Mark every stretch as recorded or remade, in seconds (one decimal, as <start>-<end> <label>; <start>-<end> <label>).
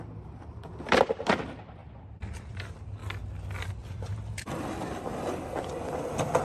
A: 0.0-1.8 remade; 1.8-2.5 recorded; 2.5-3.0 remade; 3.0-3.7 recorded; 3.7-5.1 remade; 5.1-5.8 recorded; 5.8-6.4 remade